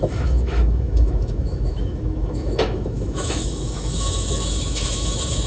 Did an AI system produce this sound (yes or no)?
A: yes